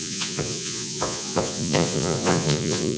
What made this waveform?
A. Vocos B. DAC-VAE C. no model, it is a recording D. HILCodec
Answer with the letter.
A